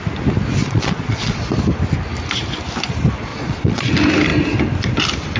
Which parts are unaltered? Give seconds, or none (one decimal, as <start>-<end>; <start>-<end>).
0.0-0.6; 1.4-3.3; 3.9-5.4